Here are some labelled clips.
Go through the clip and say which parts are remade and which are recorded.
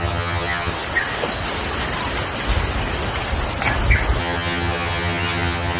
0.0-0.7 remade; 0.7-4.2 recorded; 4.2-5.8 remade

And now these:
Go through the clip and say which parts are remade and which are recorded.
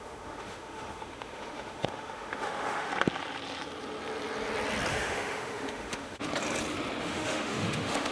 0.0-2.9 remade; 2.9-4.9 recorded; 4.9-6.3 remade; 6.3-7.0 recorded; 7.0-8.1 remade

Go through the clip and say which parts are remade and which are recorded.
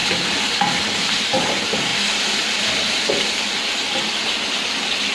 0.0-5.1 recorded